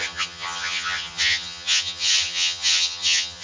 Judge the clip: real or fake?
fake